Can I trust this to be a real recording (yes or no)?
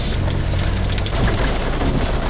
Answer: yes